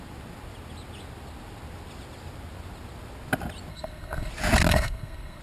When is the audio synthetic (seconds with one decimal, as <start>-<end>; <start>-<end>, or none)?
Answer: 3.7-4.3; 4.7-5.4